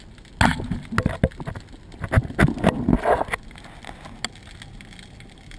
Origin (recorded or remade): recorded